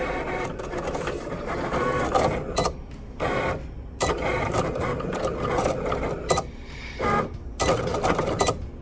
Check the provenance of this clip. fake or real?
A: fake